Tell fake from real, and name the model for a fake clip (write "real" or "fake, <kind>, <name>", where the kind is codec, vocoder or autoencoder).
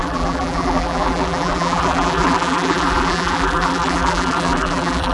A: fake, vocoder, BigVGAN v2